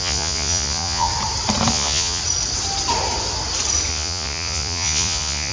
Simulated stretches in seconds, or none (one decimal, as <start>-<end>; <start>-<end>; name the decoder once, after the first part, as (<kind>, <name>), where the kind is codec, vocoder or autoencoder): 0.0-1.1 (vocoder, Vocos); 1.7-2.2; 3.9-5.5